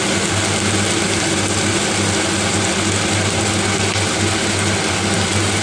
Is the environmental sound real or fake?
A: real